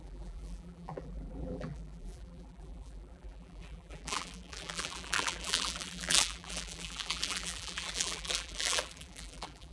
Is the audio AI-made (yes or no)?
yes